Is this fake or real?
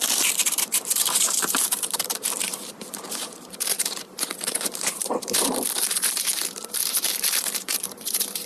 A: fake